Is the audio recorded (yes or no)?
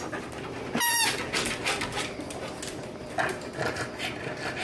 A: yes